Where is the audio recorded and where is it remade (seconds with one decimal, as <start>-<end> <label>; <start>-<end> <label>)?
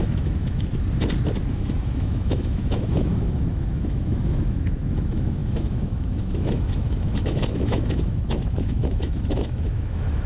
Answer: 0.0-0.7 remade; 0.7-1.5 recorded; 1.5-10.3 remade